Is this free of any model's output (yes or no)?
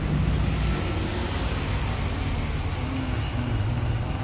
yes